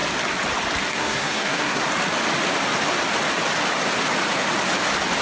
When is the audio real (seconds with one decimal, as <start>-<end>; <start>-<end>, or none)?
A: 0.0-0.9; 1.9-5.2